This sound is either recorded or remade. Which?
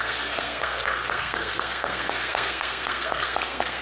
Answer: remade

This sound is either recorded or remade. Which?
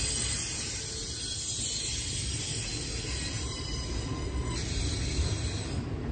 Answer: recorded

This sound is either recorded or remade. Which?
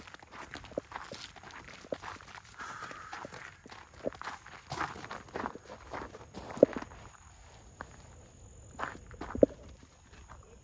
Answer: recorded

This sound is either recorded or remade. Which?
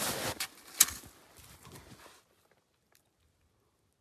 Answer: recorded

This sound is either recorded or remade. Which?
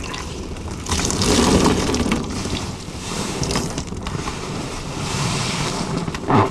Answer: remade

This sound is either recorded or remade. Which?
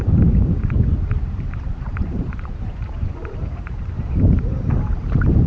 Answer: remade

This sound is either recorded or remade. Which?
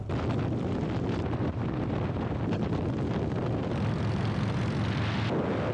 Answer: recorded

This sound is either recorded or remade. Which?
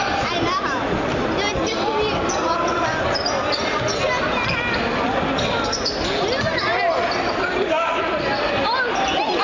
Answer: recorded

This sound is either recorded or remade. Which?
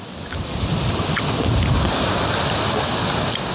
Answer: recorded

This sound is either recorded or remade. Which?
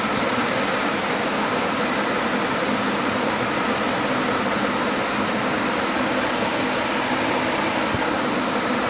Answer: recorded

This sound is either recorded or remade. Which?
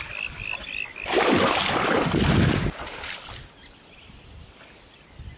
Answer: recorded